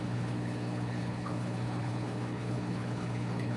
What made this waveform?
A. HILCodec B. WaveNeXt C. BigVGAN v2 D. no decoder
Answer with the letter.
A